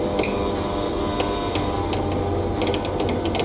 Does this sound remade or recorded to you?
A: recorded